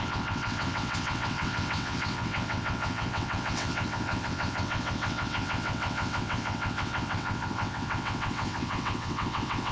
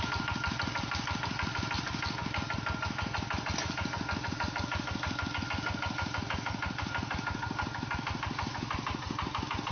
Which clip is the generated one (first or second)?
first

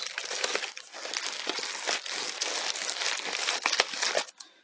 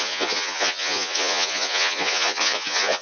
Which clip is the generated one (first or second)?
second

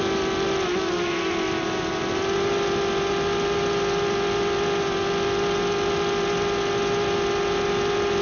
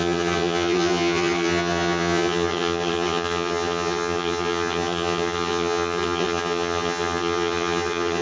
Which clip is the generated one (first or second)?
second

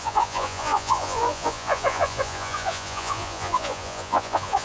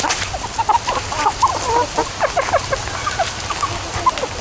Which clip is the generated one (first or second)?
first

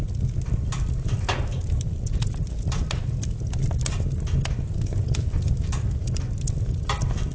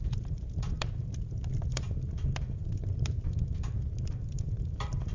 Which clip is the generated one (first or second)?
second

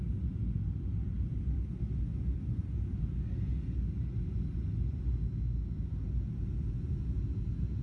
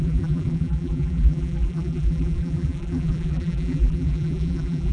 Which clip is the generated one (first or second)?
second